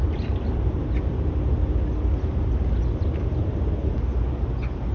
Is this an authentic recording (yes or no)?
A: yes